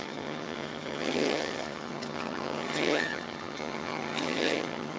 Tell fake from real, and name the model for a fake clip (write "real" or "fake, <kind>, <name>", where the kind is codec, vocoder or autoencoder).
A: fake, vocoder, HiFi-GAN